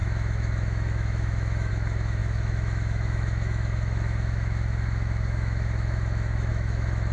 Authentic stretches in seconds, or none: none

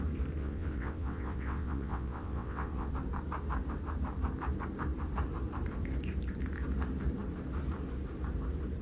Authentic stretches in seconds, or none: 0.0-0.4; 2.9-8.8

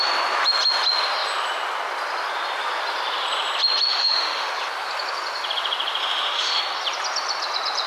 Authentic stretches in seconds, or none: 0.0-3.9; 4.5-6.0; 6.6-7.9

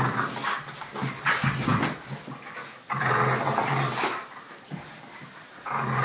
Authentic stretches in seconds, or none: 0.0-6.0

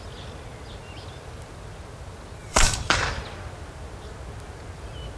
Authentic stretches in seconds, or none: 0.0-2.4; 3.2-5.2

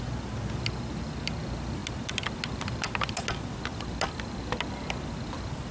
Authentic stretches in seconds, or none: 0.0-5.7